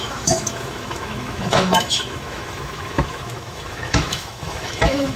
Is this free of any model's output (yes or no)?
no